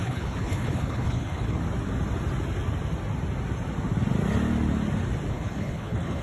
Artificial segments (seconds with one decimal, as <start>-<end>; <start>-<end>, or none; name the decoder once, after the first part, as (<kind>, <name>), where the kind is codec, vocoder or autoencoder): 0.0-1.6 (codec, HILCodec); 5.3-6.2